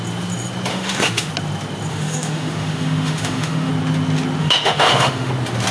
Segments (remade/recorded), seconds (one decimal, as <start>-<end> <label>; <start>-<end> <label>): 0.0-0.7 recorded; 0.7-1.3 remade; 1.3-1.9 recorded; 1.9-3.7 remade; 3.7-4.4 recorded; 4.4-5.3 remade; 5.3-5.7 recorded